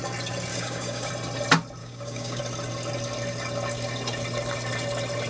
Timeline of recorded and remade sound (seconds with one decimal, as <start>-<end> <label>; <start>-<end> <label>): 0.0-0.5 recorded; 0.5-1.1 remade; 1.1-1.8 recorded; 1.8-2.4 remade; 2.4-5.3 recorded